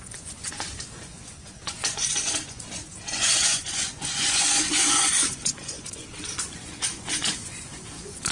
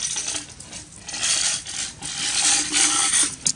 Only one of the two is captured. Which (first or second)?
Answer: second